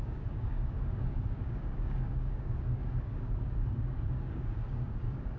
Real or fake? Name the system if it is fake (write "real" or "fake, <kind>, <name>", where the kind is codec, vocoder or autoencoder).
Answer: fake, codec, DAC